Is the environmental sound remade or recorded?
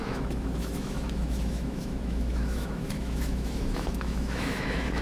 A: remade